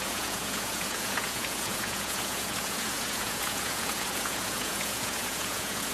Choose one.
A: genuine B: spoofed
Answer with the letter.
B